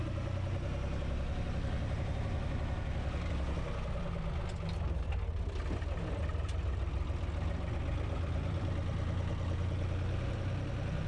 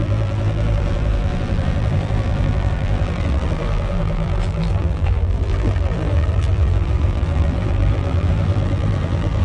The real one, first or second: first